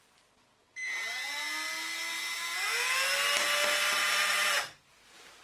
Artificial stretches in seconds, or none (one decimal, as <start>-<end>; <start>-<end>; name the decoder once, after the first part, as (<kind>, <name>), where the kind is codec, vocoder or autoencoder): 3.8-4.8 (vocoder, BigVGAN v2)

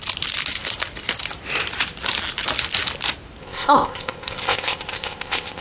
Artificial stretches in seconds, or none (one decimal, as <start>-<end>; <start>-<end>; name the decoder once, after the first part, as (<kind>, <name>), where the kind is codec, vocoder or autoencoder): 3.4-5.6 (codec, ZipCodec)

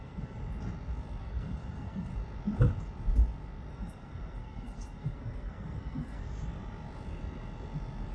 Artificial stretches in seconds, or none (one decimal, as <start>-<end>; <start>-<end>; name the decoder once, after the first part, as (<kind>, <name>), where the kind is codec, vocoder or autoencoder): 0.0-0.4 (codec, SNAC); 1.2-2.1; 3.7-6.2

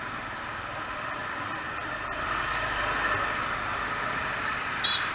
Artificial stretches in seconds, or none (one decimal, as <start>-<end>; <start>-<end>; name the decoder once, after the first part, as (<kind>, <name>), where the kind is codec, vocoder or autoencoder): none

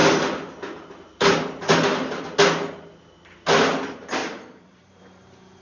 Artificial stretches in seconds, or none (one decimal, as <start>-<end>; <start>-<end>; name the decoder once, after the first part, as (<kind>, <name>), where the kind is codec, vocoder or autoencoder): 4.2-5.0 (vocoder, BigVGAN v2)